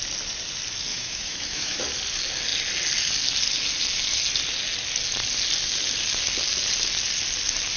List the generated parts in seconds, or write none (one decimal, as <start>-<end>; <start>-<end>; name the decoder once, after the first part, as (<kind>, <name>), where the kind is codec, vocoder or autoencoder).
0.9-1.8 (autoencoder, DAC-VAE)